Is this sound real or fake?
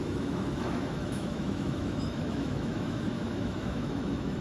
fake